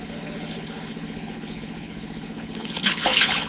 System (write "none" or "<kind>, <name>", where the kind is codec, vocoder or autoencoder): codec, HILCodec